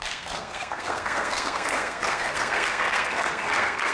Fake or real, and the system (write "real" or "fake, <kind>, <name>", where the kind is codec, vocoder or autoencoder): fake, codec, SNAC